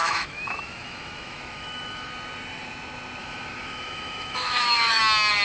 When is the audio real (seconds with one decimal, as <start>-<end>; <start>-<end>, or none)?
2.1-3.2; 5.0-5.4